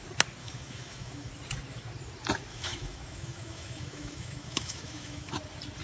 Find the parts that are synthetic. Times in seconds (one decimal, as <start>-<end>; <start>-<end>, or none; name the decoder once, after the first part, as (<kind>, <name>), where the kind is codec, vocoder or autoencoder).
0.4-1.3 (autoencoder, DAC-VAE); 2.5-5.3